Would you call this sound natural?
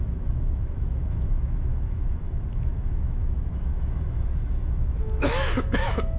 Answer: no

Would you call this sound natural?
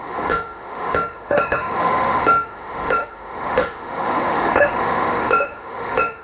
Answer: no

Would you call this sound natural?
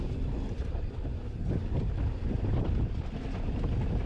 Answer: yes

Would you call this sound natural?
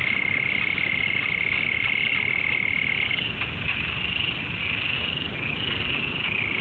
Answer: yes